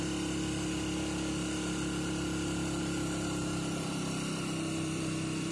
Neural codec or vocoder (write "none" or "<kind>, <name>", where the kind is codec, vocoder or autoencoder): vocoder, BigVGAN v2